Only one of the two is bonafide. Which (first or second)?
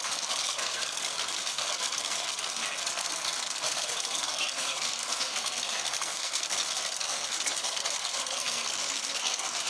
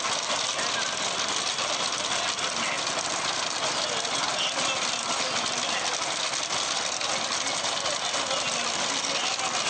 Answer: second